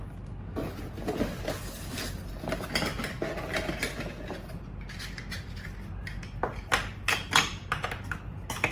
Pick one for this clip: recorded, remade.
recorded